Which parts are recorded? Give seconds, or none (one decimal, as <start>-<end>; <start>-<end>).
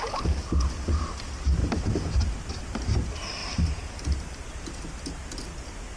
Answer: 0.0-1.6; 2.3-3.4; 4.8-6.0